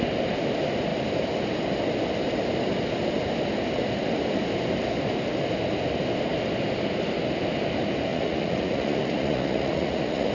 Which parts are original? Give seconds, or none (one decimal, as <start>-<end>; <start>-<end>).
0.0-8.1

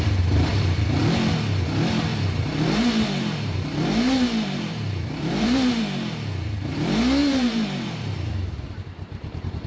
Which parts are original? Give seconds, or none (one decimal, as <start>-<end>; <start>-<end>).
0.0-2.1; 5.8-7.2

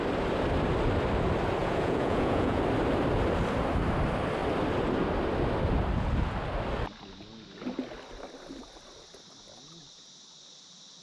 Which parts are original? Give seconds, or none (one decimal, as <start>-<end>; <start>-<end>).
0.0-1.6; 2.6-11.0

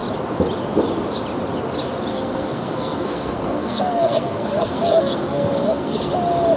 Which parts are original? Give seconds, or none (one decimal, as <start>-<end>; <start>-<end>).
0.0-2.1; 6.1-6.6

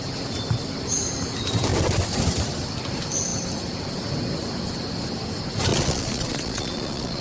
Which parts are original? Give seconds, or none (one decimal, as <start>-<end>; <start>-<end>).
0.0-5.7

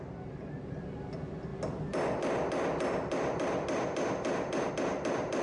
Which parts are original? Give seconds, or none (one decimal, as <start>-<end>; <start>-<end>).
0.0-5.4

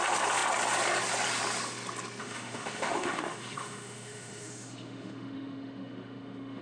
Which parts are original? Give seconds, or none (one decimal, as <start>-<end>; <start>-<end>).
0.0-2.2